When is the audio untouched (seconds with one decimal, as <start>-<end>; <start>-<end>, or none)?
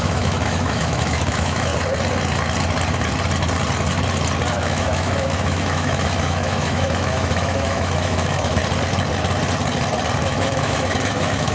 1.7-4.5; 8.6-10.2